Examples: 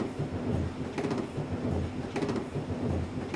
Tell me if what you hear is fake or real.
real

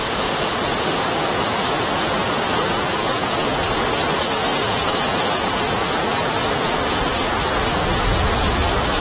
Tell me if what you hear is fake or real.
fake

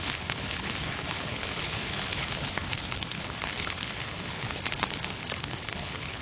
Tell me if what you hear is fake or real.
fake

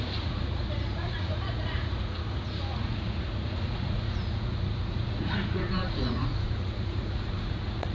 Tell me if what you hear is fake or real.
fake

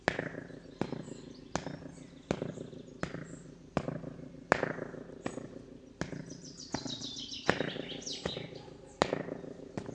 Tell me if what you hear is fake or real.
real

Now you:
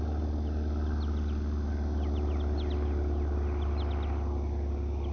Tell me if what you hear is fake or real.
real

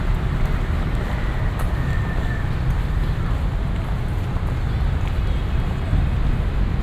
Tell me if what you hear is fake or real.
real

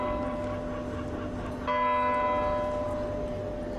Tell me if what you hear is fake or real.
real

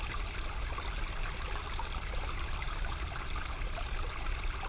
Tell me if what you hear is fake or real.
real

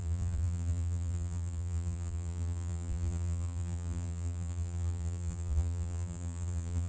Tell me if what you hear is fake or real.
fake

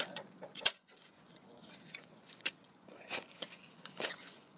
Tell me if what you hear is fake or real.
fake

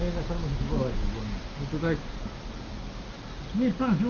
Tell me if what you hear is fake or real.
real